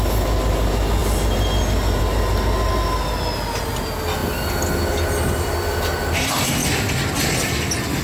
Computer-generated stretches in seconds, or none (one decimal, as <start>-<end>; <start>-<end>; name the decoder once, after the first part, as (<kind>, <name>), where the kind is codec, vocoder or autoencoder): none